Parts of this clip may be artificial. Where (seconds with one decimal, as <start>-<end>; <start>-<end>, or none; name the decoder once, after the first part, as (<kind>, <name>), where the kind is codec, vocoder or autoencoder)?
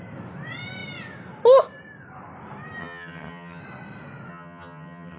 2.8-3.6 (vocoder, HiFi-GAN); 4.3-5.2